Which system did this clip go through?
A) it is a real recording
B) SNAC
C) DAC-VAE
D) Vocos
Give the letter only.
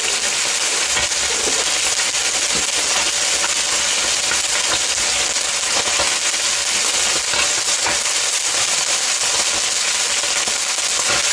A